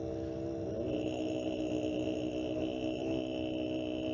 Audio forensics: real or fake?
real